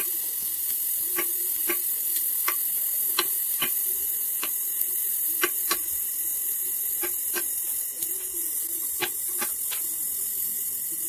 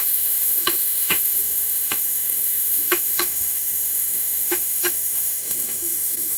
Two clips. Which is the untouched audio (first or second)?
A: first